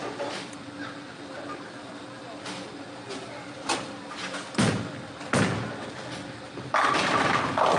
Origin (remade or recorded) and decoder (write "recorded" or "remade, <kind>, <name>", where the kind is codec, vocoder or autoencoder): recorded